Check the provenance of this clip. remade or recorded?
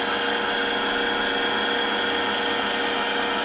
recorded